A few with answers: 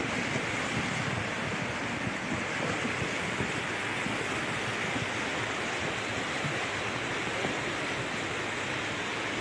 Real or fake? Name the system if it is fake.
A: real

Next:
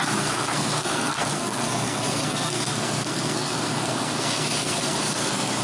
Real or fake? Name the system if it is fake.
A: fake, codec, SNAC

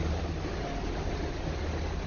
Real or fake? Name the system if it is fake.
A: real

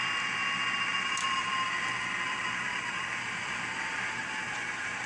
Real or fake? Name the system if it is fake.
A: fake, vocoder, BigVGAN v2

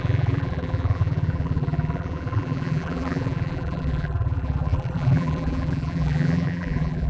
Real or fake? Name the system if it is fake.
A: fake, vocoder, BigVGAN v2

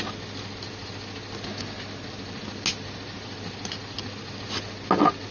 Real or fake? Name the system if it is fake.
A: real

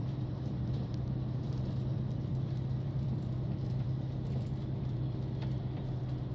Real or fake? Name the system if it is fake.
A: fake, vocoder, BigVGAN v2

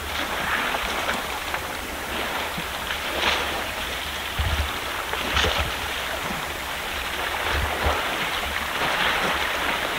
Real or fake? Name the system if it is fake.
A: fake, vocoder, BigVGAN v2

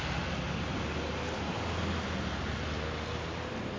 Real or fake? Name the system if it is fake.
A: real